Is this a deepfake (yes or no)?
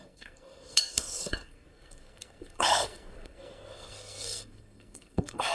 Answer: yes